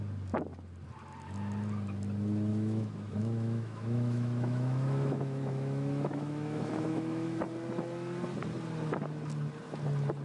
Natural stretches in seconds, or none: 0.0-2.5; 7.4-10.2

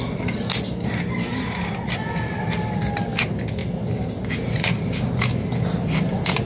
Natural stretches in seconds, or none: 0.0-6.5

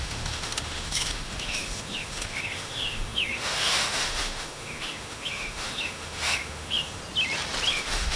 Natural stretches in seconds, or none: 7.0-7.7